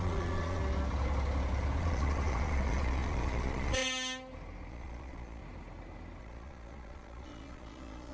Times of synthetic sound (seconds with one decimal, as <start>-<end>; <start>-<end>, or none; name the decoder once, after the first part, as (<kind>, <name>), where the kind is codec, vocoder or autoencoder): 0.0-0.6 (vocoder, Vocos); 1.8-3.8; 4.7-5.4; 6.2-8.1